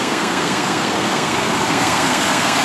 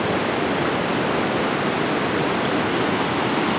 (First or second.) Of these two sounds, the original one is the second